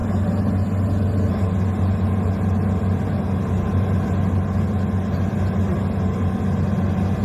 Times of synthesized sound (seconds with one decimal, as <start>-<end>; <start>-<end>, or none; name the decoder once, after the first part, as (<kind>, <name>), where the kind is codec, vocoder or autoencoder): none